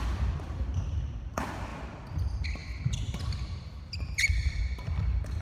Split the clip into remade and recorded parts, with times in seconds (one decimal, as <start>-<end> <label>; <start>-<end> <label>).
0.0-5.4 remade